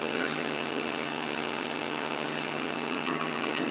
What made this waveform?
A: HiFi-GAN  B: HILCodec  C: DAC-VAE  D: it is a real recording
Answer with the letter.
A